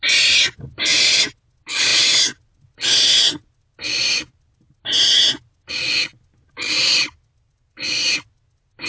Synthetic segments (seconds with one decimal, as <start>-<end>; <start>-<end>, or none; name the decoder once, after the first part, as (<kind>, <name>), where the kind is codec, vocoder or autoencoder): none